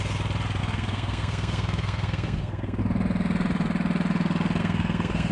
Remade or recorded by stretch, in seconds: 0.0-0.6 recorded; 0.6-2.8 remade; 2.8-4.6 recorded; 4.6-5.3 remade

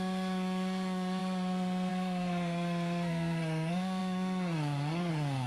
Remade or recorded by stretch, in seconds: 0.0-5.5 remade

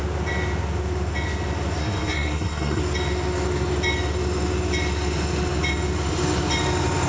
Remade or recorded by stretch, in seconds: 0.0-1.8 recorded; 1.8-2.8 remade; 2.8-7.1 recorded

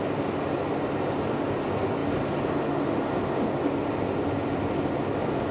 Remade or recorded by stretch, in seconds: 0.0-5.5 recorded

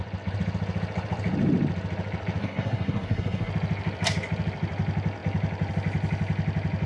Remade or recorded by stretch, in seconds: 0.0-2.4 recorded; 2.4-3.5 remade; 3.5-6.9 recorded